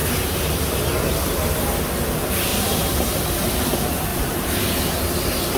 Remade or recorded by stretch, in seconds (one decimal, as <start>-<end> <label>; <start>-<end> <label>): 0.0-0.8 remade; 0.8-2.5 recorded; 2.5-3.2 remade; 3.2-4.1 recorded; 4.1-4.8 remade; 4.8-5.6 recorded